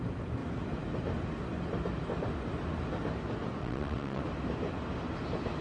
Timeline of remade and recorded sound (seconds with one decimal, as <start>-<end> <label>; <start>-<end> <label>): 0.0-3.6 recorded; 3.6-4.2 remade; 4.2-5.6 recorded